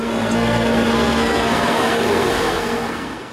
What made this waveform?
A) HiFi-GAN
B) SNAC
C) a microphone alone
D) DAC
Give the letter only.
B